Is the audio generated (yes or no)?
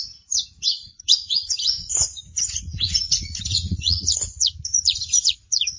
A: yes